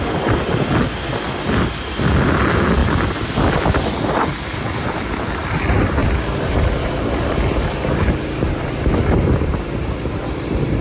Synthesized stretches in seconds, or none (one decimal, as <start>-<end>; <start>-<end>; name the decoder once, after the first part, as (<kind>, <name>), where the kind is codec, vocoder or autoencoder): none